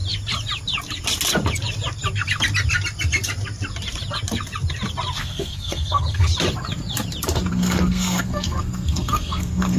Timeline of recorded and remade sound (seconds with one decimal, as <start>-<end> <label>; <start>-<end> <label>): 0.0-5.2 recorded; 5.2-6.3 remade; 6.3-7.5 recorded; 7.5-9.8 remade